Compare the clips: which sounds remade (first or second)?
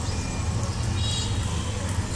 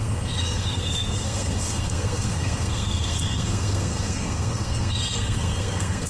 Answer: second